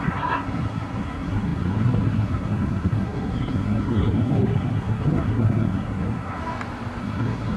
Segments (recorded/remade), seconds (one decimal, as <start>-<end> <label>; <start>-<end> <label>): 0.0-6.4 remade; 6.4-7.0 recorded; 7.0-7.6 remade